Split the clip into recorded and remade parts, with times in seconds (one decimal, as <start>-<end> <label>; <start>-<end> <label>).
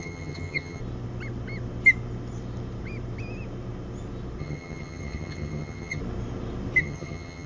0.0-0.8 remade; 0.8-4.4 recorded; 4.4-6.0 remade; 6.0-6.8 recorded; 6.8-7.5 remade